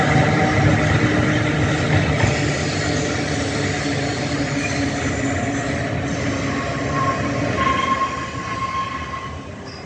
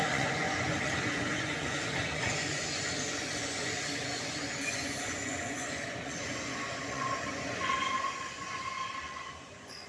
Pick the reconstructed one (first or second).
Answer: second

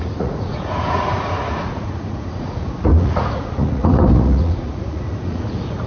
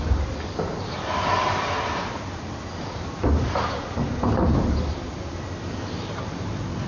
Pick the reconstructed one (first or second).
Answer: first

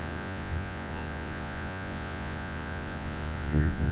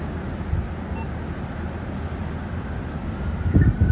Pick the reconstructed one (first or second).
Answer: first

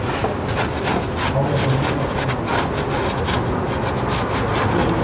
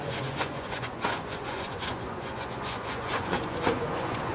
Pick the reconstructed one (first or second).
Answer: second